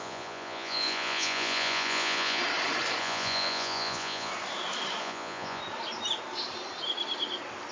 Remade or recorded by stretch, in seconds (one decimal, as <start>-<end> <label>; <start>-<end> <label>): 0.0-2.4 remade; 2.4-3.0 recorded; 3.0-4.3 remade; 4.3-5.0 recorded; 5.0-5.6 remade; 5.6-7.7 recorded